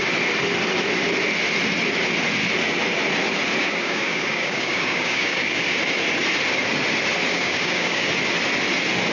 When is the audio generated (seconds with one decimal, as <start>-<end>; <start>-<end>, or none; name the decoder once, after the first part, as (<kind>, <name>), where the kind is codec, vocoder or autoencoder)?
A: 3.6-5.8 (codec, DAC); 7.3-8.1